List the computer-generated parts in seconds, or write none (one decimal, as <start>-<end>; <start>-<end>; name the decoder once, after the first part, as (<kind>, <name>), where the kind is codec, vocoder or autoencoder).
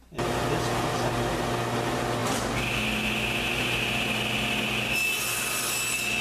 none